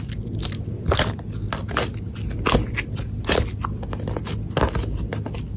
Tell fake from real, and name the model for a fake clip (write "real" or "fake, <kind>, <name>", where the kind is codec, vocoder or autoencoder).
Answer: real